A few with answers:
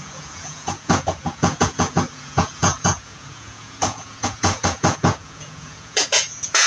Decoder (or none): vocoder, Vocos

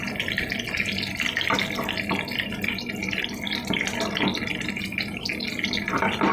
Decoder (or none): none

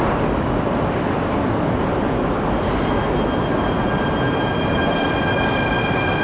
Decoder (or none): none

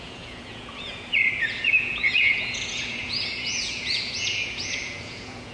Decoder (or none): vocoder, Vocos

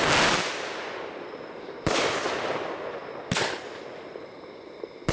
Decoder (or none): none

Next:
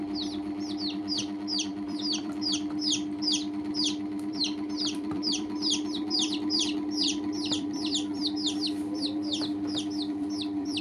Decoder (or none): vocoder, BigVGAN v2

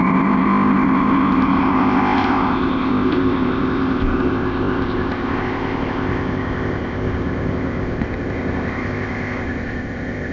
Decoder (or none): codec, ZipCodec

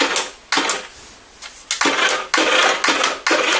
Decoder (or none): none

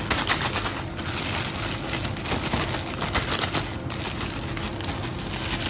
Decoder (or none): none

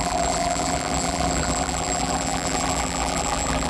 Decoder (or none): vocoder, BigVGAN v2